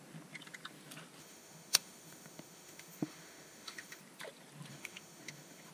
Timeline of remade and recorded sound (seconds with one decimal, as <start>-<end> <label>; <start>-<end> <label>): 0.0-1.2 recorded; 1.2-4.0 remade; 4.0-4.7 recorded; 4.7-5.7 remade